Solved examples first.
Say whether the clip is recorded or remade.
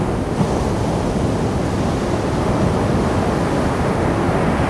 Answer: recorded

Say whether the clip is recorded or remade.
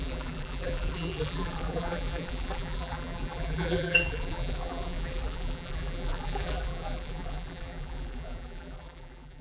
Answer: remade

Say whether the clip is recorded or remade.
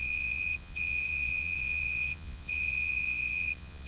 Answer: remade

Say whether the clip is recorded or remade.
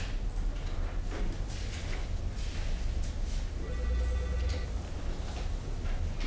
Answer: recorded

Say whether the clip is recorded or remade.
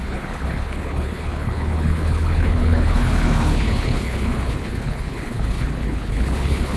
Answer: remade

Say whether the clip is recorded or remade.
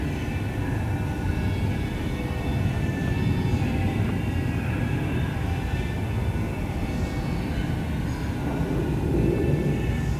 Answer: recorded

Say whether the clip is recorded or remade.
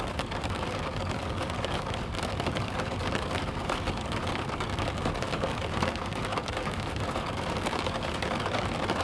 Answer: remade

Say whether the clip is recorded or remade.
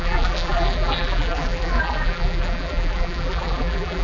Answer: remade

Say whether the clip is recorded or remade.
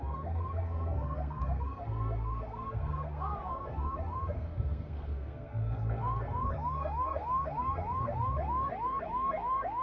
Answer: remade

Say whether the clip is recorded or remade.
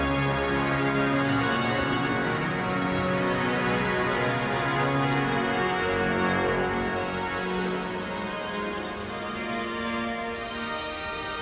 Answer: recorded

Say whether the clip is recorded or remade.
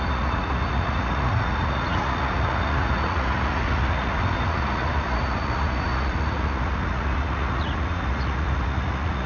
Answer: remade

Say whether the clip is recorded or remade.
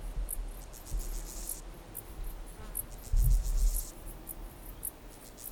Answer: recorded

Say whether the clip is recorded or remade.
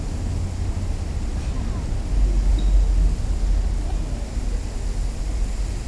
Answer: recorded